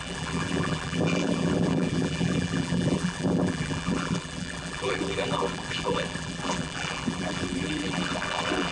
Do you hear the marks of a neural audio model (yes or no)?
yes